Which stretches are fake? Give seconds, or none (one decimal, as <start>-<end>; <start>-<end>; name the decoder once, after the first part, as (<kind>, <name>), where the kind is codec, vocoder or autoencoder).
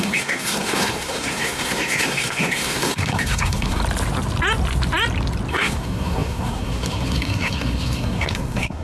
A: 0.0-3.8 (codec, SNAC); 5.5-8.8